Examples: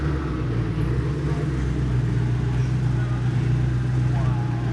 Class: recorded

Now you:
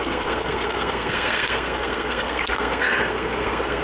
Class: remade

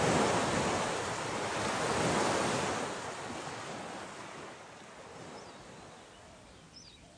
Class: recorded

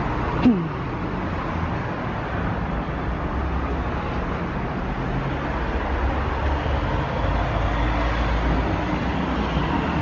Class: recorded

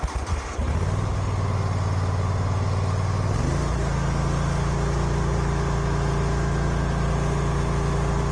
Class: recorded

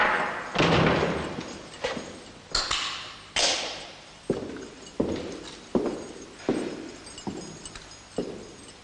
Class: recorded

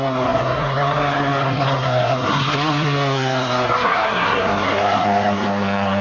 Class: remade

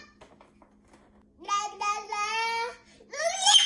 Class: recorded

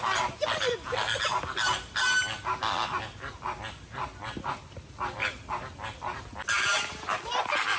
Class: recorded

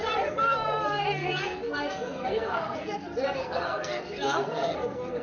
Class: remade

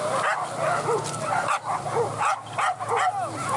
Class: recorded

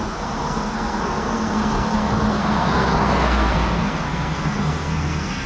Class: remade